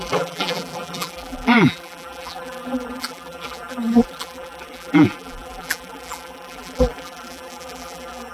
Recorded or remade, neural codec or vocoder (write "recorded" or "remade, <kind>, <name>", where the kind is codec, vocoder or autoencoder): remade, vocoder, BigVGAN v2